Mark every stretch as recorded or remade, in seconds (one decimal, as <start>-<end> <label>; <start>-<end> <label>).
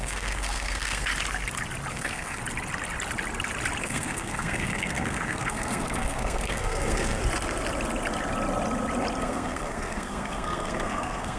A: 0.0-1.1 remade; 1.1-1.9 recorded; 1.9-2.4 remade; 2.4-3.8 recorded; 3.8-7.2 remade; 7.2-9.2 recorded; 9.2-11.4 remade